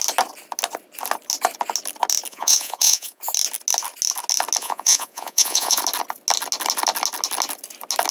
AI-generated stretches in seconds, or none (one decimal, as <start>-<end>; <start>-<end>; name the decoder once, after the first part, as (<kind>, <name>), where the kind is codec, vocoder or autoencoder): 2.3-3.2 (vocoder, Vocos); 4.6-5.8